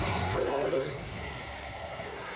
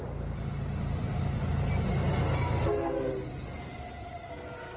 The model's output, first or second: first